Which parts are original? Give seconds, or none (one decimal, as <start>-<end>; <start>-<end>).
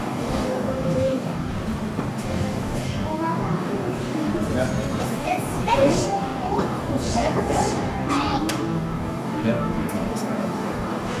1.6-2.1; 4.3-5.0